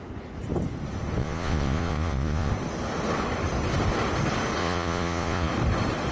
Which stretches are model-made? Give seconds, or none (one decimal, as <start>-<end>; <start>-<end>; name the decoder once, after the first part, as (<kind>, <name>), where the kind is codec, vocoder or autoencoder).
1.2-2.5 (vocoder, Vocos); 4.6-5.5